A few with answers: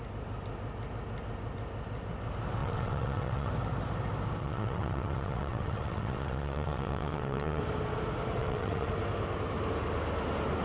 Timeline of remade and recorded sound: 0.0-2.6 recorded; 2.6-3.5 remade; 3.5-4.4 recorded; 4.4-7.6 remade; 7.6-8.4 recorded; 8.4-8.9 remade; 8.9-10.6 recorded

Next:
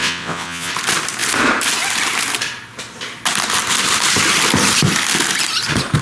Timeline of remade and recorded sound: 0.0-0.7 remade; 0.7-6.0 recorded

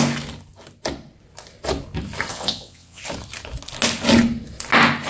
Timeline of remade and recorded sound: 0.0-2.3 recorded; 2.3-3.0 remade; 3.0-5.1 recorded